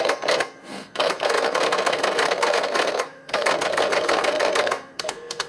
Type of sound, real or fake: fake